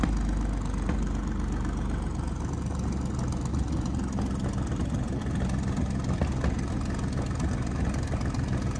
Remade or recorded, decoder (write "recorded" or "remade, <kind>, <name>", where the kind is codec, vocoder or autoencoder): recorded